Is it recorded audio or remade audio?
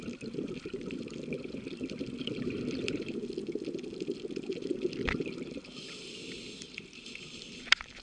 remade